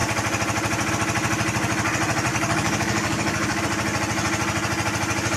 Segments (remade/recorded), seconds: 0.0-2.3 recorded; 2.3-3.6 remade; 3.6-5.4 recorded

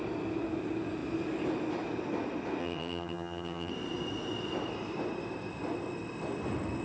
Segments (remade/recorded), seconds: 0.0-2.6 recorded; 2.6-3.7 remade; 3.7-6.8 recorded

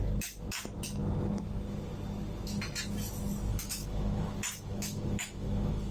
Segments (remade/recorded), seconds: 0.0-3.5 recorded; 3.5-5.9 remade

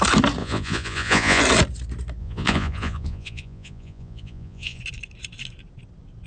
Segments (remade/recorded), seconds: 0.0-0.4 recorded; 0.4-1.4 remade; 1.4-2.2 recorded; 2.2-4.8 remade; 4.8-6.3 recorded

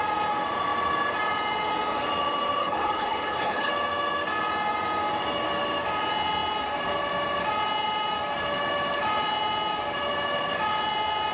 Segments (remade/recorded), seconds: 0.0-2.6 recorded; 2.6-3.7 remade; 3.7-11.3 recorded

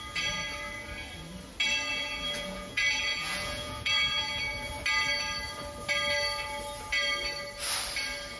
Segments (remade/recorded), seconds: 0.0-1.9 recorded; 1.9-4.7 remade; 4.7-8.4 recorded

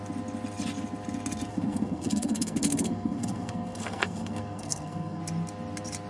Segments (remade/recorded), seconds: 0.0-1.5 recorded; 1.5-5.2 remade; 5.2-6.1 recorded